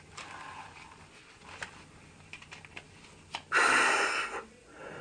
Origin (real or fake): real